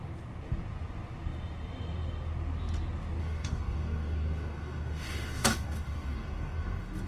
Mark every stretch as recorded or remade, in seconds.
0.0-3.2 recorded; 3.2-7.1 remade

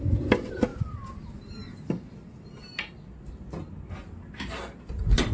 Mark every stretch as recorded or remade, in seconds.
0.0-5.3 recorded

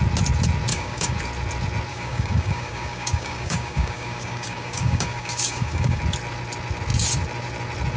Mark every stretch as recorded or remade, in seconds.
0.0-0.7 recorded; 0.7-1.2 remade; 1.2-1.9 recorded; 1.9-6.0 remade; 6.0-8.0 recorded

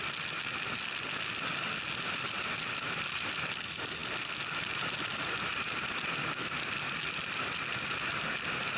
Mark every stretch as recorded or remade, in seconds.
0.0-8.8 recorded

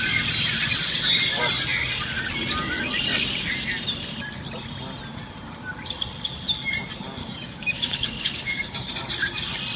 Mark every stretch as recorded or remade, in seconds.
0.0-7.2 recorded; 7.2-8.9 remade; 8.9-9.8 recorded

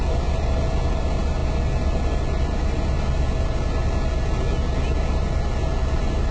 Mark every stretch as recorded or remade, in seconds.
0.0-6.3 recorded

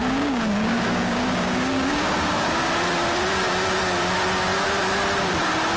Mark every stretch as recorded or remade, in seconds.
0.0-2.7 remade; 2.7-5.8 recorded